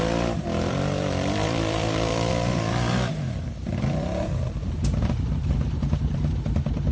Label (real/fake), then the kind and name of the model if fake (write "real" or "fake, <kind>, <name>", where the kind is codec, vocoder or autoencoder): fake, vocoder, BigVGAN v2